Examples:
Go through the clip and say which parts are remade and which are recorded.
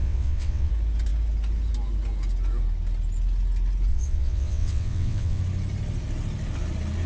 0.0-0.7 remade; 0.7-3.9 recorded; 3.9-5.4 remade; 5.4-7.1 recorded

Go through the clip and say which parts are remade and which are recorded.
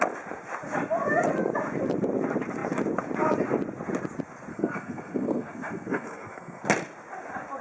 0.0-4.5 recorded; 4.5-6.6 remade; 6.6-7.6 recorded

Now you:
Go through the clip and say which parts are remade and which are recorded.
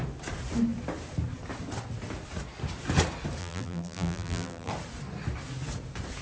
0.0-3.4 recorded; 3.4-4.7 remade; 4.7-6.2 recorded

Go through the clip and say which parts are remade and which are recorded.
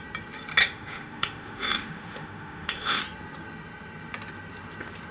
0.0-0.6 recorded; 0.6-3.0 remade; 3.0-5.1 recorded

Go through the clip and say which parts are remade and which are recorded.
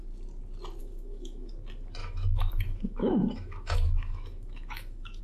0.0-0.8 recorded; 0.8-1.5 remade; 1.5-2.0 recorded; 2.0-5.2 remade